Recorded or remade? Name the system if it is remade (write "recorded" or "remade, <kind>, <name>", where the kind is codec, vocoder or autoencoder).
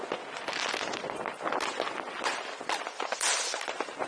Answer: recorded